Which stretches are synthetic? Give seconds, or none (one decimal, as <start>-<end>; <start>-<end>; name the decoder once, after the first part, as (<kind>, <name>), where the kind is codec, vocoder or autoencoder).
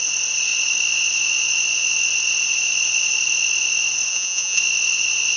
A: 4.1-4.6 (vocoder, Vocos)